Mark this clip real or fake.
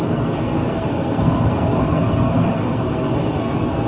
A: fake